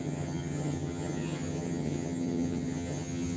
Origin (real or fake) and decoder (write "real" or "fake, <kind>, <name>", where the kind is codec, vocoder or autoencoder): fake, vocoder, HiFi-GAN